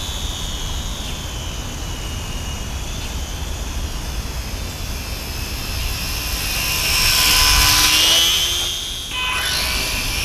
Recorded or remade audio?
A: recorded